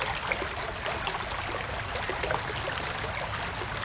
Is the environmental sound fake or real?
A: real